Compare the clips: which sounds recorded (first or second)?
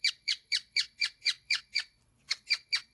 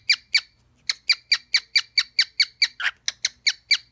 second